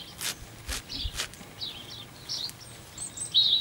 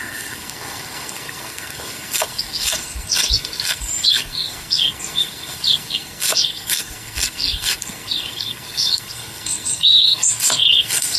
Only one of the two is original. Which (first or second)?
first